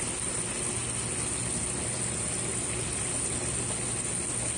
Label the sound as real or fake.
real